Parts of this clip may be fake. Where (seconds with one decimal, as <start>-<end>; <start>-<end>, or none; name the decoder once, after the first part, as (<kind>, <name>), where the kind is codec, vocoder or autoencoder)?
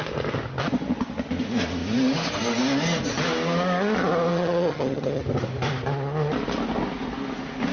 4.3-5.2 (vocoder, HiFi-GAN)